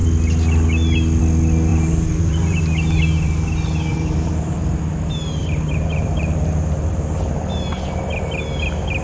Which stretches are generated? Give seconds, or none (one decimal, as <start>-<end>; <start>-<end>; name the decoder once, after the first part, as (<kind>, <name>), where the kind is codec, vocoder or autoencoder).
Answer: 1.7-2.6 (vocoder, BigVGAN v2); 3.9-4.8; 5.4-6.5